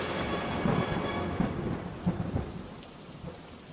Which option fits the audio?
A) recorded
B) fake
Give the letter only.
B